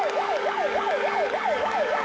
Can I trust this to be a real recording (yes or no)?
no